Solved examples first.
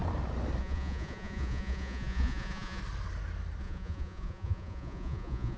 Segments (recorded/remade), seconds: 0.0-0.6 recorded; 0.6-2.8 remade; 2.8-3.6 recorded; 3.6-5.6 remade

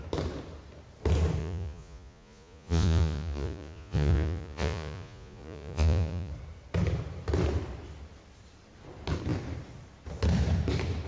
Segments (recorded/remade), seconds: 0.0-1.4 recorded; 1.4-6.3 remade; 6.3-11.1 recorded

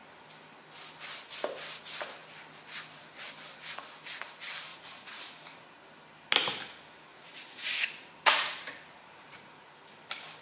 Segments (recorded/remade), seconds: 0.0-4.7 recorded; 4.7-5.8 remade; 5.8-7.1 recorded; 7.1-9.7 remade; 9.7-10.4 recorded

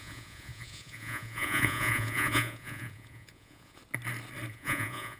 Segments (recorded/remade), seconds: 0.0-3.8 remade; 3.8-4.5 recorded; 4.5-5.2 remade